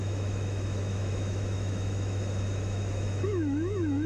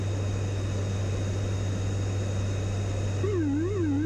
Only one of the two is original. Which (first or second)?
second